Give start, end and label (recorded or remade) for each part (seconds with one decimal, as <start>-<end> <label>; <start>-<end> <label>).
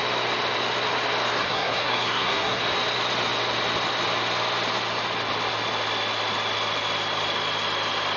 0.0-1.4 recorded; 1.4-2.6 remade; 2.6-8.2 recorded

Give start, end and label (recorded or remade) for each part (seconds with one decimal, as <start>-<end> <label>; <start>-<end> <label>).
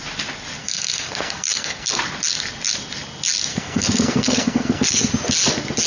0.0-0.6 recorded; 0.6-1.9 remade; 1.9-3.5 recorded; 3.5-5.1 remade; 5.1-5.9 recorded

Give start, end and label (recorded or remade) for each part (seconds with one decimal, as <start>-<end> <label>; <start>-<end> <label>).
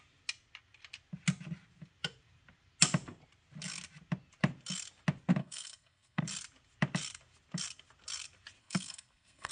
0.0-5.4 recorded; 5.4-6.2 remade; 6.2-8.6 recorded; 8.6-9.5 remade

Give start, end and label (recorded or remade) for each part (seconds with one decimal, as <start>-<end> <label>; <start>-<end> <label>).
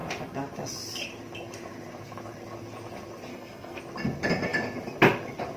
0.0-3.3 recorded; 3.3-3.8 remade; 3.8-5.6 recorded